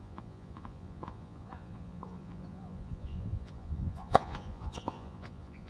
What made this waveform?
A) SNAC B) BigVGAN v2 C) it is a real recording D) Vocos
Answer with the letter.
D